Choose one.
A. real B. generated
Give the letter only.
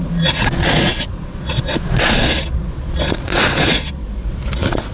B